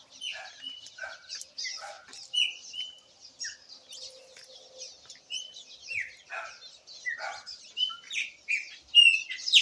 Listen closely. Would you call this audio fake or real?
real